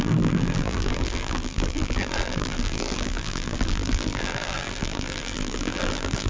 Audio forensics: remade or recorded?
remade